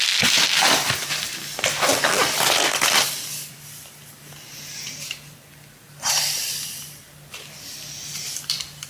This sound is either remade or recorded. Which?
remade